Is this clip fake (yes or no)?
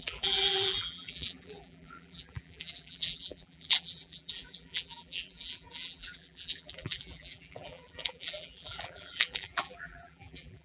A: yes